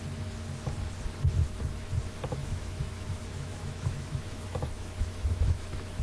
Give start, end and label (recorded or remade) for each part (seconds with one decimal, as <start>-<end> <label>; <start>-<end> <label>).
0.0-1.4 recorded; 1.4-1.9 remade; 1.9-2.4 recorded; 2.4-6.0 remade